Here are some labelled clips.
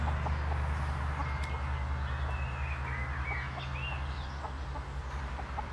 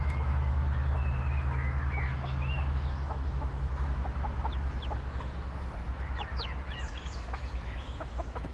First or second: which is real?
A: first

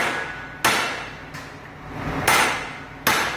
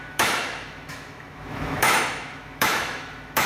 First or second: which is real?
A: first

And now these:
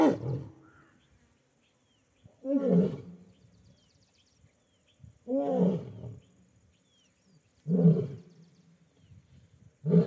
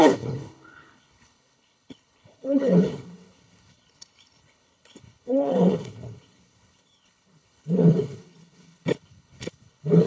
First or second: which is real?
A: first